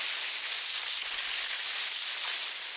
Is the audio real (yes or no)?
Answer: yes